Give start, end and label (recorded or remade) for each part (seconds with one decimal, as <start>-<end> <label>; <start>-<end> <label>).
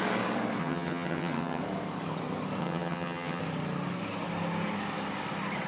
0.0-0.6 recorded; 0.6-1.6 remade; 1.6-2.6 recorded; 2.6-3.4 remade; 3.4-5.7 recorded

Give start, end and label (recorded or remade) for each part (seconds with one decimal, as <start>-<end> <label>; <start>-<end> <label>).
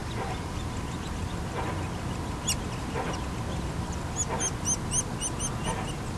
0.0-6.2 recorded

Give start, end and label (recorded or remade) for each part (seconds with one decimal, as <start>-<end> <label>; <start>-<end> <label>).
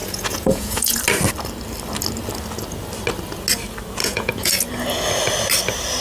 0.0-1.0 remade; 1.0-4.0 recorded; 4.0-4.7 remade; 4.7-6.0 recorded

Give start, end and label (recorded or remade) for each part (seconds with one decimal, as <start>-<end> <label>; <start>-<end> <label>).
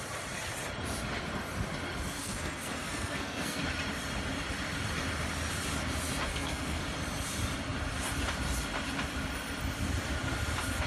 0.0-2.2 recorded; 2.2-3.6 remade; 3.6-6.3 recorded; 6.3-6.8 remade; 6.8-10.9 recorded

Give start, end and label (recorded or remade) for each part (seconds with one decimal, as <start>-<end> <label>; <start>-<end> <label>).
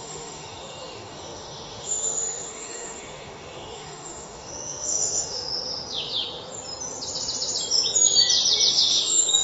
0.0-5.5 remade; 5.5-8.7 recorded; 8.7-9.4 remade